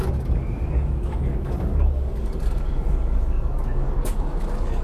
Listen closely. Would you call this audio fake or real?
fake